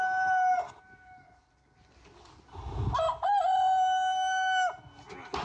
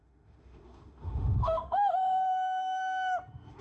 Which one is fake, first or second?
second